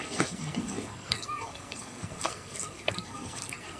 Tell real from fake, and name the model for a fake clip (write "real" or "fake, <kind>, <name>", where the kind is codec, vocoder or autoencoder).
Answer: fake, codec, SNAC